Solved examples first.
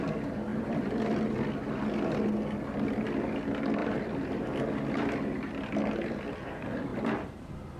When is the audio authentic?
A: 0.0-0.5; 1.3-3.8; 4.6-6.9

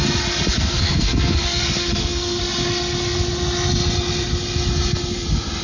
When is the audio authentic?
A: 0.0-0.5; 2.4-5.6

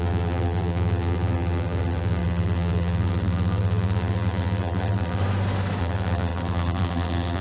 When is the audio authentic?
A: 5.2-5.8

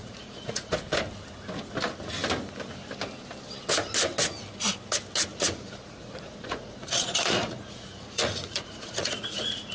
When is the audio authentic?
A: 0.7-5.3